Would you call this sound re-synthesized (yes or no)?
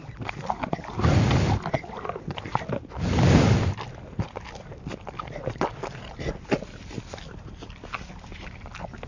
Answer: no